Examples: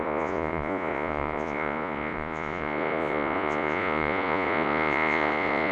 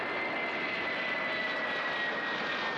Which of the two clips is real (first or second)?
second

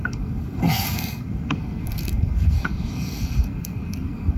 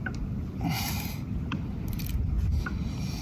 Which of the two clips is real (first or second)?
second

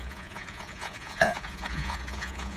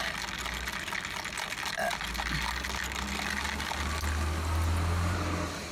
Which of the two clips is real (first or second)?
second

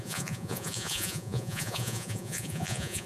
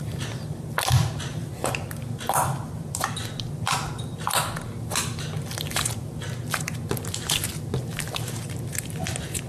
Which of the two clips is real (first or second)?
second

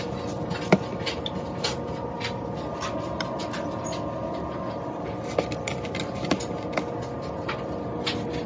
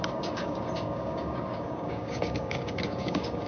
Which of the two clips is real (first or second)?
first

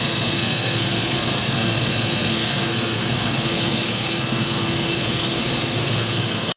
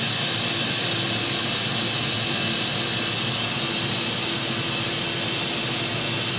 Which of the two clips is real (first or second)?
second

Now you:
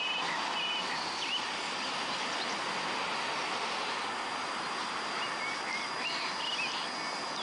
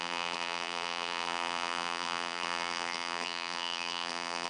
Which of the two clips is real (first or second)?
first